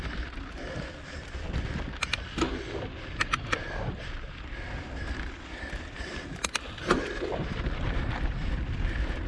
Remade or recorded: recorded